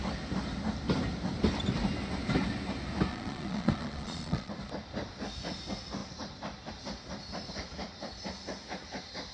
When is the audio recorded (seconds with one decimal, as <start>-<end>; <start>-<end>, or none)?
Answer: 0.0-3.1; 4.5-9.3